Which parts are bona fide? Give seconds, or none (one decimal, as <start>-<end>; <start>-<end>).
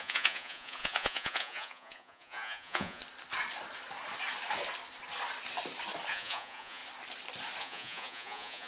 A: 3.0-6.1; 6.8-7.6